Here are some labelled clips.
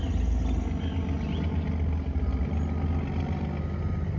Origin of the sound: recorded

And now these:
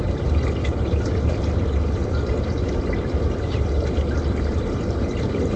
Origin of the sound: remade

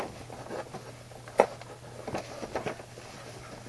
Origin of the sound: recorded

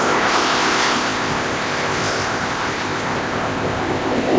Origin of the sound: remade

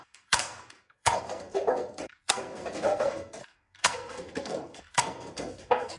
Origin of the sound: remade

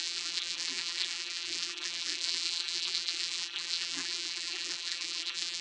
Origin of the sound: remade